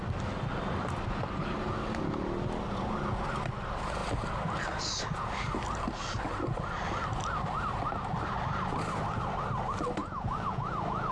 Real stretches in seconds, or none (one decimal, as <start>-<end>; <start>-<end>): 0.0-10.0; 10.7-11.1